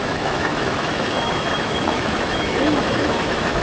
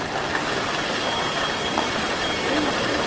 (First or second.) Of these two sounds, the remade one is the first